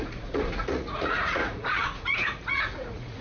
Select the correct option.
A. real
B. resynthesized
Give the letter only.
B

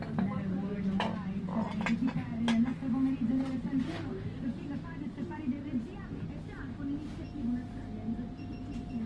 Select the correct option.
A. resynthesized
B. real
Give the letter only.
B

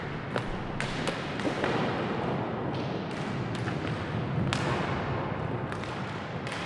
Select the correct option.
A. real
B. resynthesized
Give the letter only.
A